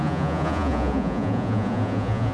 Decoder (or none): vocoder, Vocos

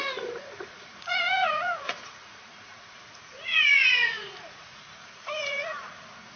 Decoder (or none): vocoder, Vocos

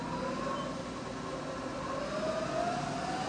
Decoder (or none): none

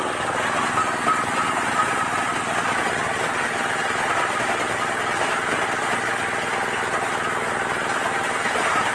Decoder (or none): none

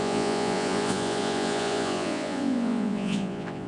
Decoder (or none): vocoder, Vocos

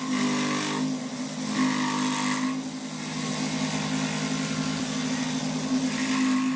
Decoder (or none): none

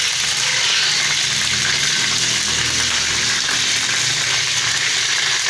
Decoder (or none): none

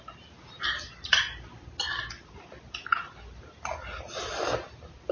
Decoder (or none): none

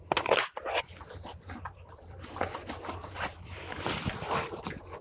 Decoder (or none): none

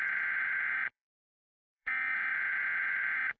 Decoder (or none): vocoder, Vocos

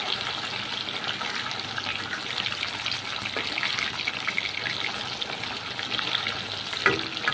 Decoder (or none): none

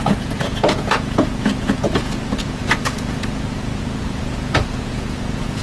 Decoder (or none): vocoder, Vocos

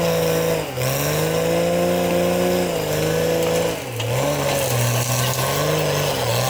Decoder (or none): none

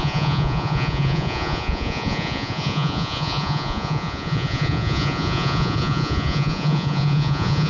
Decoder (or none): vocoder, Vocos